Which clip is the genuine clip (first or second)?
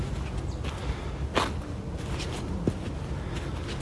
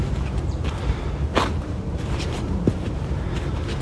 first